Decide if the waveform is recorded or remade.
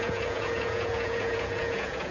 remade